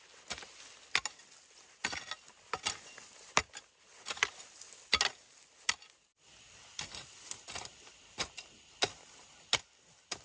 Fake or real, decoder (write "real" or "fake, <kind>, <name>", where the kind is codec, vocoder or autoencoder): real